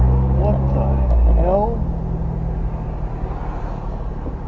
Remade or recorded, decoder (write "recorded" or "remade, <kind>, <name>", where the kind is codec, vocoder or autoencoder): recorded